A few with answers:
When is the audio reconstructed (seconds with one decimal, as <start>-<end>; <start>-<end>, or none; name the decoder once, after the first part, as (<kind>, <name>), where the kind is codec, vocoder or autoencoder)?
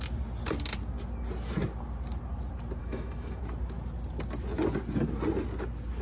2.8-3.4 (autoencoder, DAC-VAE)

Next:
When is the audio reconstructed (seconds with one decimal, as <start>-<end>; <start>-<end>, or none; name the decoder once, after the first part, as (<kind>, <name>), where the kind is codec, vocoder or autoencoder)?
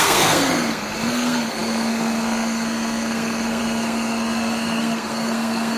0.0-5.8 (codec, SNAC)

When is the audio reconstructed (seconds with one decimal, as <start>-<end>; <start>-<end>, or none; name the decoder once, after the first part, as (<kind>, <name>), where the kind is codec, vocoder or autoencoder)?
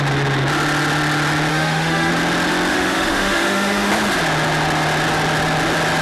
1.5-2.1 (autoencoder, DAC-VAE); 2.7-3.9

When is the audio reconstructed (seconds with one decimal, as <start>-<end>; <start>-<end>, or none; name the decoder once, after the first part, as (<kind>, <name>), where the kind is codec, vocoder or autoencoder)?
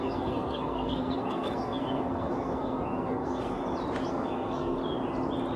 0.0-3.6 (codec, SNAC); 4.1-4.8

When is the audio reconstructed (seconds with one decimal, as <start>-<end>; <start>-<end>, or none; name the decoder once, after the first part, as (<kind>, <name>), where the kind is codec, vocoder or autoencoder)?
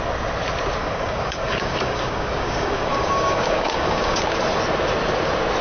0.8-4.2 (codec, DAC)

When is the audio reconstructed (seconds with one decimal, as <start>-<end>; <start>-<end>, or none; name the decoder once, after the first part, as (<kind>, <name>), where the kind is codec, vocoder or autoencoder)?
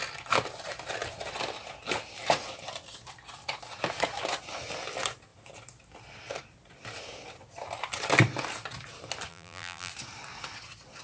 9.3-9.9 (vocoder, BigVGAN v2)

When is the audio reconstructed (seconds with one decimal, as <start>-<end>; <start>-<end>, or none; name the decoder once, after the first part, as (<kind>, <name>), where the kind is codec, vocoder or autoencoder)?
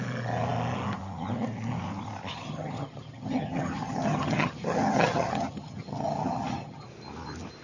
2.3-6.9 (vocoder, HiFi-GAN)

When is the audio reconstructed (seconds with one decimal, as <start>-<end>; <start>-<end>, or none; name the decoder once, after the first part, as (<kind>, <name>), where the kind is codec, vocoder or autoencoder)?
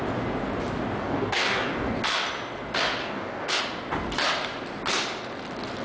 1.0-2.0 (codec, DAC); 3.0-3.6